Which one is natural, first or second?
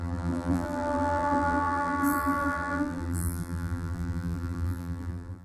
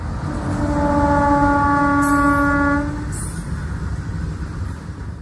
second